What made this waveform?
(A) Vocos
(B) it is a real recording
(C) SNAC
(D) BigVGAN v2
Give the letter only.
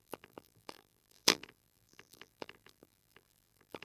D